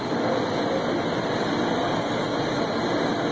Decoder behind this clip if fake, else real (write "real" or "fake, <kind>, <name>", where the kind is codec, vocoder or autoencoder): real